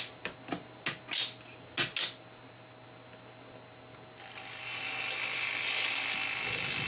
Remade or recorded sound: recorded